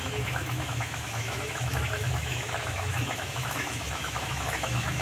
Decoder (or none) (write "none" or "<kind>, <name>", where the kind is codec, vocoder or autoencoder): autoencoder, DAC-VAE